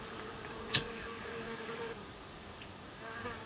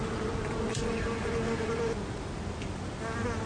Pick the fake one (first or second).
first